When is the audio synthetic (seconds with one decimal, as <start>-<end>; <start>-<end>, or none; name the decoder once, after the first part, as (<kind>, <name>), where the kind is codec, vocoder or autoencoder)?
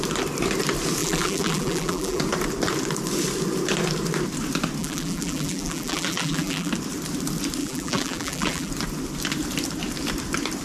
1.0-2.2 (vocoder, BigVGAN v2); 4.8-6.7; 7.6-8.7